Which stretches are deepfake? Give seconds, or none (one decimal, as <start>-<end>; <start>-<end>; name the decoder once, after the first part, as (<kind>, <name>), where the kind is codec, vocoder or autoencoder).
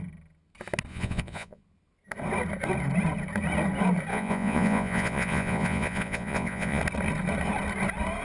0.9-1.6 (vocoder, Vocos); 4.1-6.8